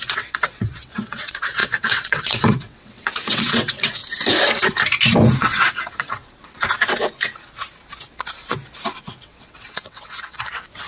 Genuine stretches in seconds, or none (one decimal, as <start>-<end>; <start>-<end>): 4.0-5.4; 6.2-9.1